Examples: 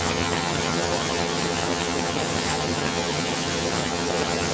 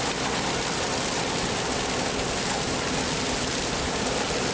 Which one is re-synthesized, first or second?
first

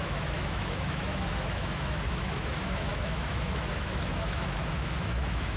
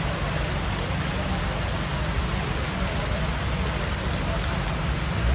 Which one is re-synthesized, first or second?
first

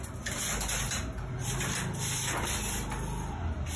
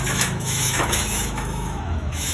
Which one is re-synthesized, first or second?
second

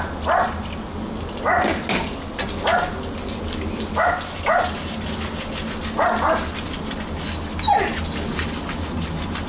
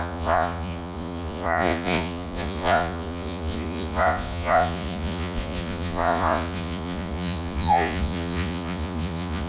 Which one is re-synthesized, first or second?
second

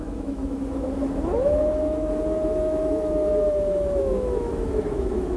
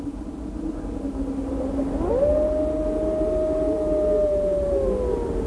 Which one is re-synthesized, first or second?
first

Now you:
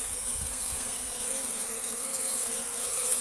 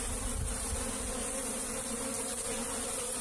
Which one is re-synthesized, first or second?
first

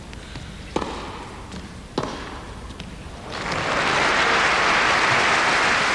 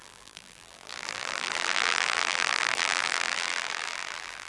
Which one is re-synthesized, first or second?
second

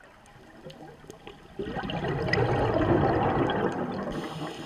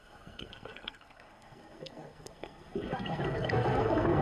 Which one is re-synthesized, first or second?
second